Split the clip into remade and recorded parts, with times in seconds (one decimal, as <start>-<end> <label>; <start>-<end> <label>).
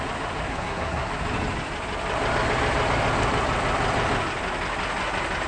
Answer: 0.0-0.5 recorded; 0.5-1.1 remade; 1.1-5.5 recorded